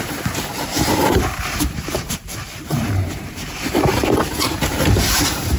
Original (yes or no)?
no